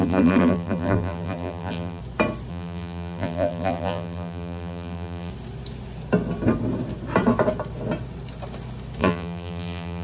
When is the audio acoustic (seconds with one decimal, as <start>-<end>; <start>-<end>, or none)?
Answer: 2.0-2.5; 5.3-9.0